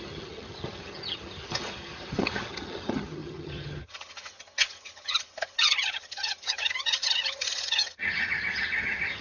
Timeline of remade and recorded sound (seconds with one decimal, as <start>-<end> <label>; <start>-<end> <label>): 0.0-9.2 remade